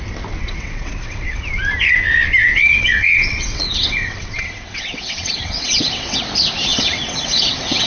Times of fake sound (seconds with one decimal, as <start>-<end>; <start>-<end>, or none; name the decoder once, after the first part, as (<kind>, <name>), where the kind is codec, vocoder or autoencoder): 0.4-1.4 (vocoder, WaveNeXt); 2.4-6.2; 6.7-7.9